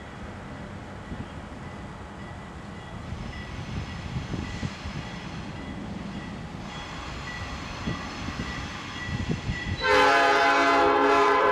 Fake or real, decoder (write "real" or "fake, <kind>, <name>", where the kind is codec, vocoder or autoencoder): real